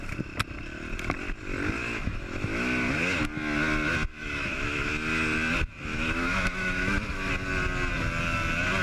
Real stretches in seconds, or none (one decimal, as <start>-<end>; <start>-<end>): 0.0-1.8; 2.9-4.1; 4.9-5.9; 7.3-8.8